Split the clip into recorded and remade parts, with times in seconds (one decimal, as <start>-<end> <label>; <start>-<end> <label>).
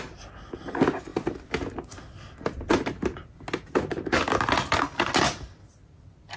0.0-6.4 recorded